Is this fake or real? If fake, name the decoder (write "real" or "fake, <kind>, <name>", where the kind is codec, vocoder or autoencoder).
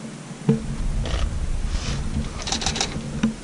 real